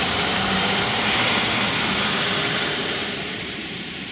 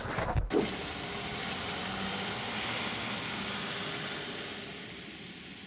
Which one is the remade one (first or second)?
first